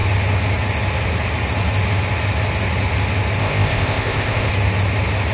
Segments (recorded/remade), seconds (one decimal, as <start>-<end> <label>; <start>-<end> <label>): 0.0-3.4 recorded; 3.4-4.5 remade; 4.5-5.3 recorded